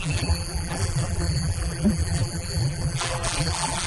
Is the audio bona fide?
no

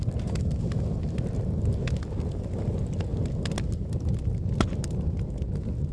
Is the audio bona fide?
yes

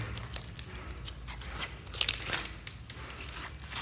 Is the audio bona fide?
yes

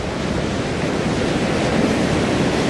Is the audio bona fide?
yes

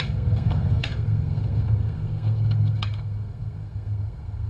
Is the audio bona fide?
no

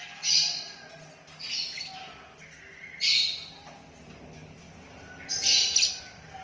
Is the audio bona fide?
yes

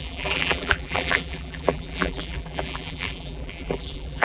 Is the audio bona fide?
no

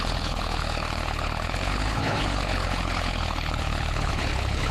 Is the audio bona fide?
no